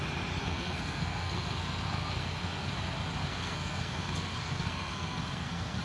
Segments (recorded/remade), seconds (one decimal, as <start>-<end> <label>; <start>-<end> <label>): 0.0-0.4 recorded; 0.4-2.7 remade; 2.7-3.2 recorded; 3.2-5.8 remade